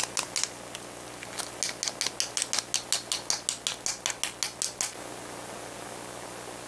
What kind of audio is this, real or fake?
real